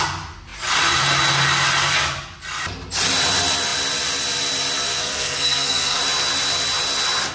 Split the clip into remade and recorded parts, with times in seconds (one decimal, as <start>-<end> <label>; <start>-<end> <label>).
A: 0.0-5.0 recorded; 5.0-6.0 remade; 6.0-7.3 recorded